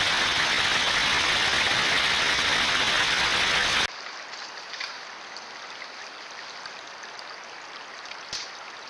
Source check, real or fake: real